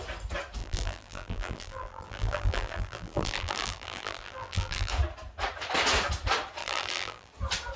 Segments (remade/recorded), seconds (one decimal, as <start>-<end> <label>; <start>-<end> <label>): 0.0-0.6 recorded; 0.6-4.9 remade; 4.9-6.6 recorded; 6.6-7.3 remade; 7.3-7.8 recorded